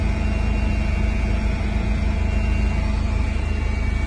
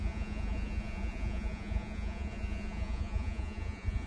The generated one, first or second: second